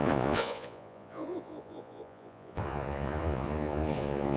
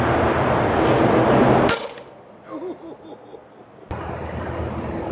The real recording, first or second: second